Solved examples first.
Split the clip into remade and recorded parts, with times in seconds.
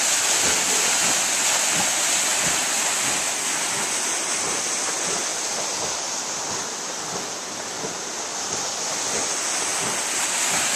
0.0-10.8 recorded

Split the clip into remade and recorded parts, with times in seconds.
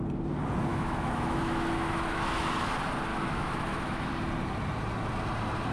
0.0-0.7 recorded; 0.7-2.7 remade; 2.7-3.1 recorded; 3.1-4.1 remade; 4.1-5.7 recorded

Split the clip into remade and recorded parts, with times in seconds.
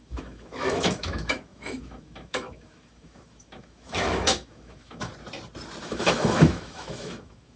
0.0-5.1 remade; 5.1-5.8 recorded; 5.8-7.6 remade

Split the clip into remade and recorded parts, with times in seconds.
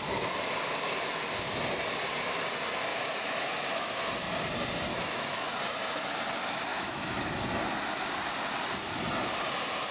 0.0-2.9 recorded; 2.9-4.0 remade; 4.0-4.9 recorded; 4.9-5.5 remade; 5.5-6.7 recorded; 6.7-7.2 remade; 7.2-9.9 recorded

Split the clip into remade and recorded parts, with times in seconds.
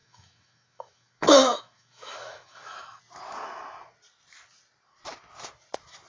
0.0-3.0 remade; 3.0-6.1 recorded